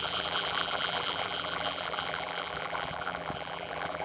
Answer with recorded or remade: remade